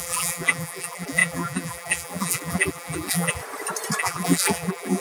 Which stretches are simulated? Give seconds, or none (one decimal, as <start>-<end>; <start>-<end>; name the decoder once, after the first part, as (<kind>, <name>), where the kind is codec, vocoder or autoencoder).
0.0-3.4 (vocoder, BigVGAN v2); 4.0-5.0